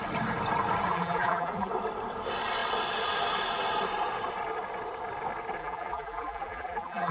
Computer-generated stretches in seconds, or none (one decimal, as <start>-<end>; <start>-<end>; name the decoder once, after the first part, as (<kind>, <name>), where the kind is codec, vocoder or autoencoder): 0.9-1.7 (vocoder, BigVGAN v2); 5.6-7.1